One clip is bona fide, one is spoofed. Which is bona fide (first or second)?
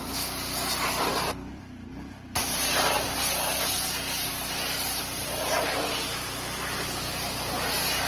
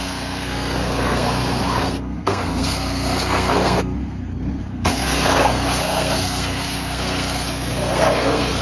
first